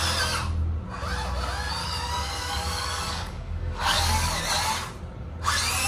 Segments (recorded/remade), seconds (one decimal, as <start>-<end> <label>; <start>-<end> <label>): 0.0-1.8 recorded; 1.8-4.4 remade; 4.4-5.9 recorded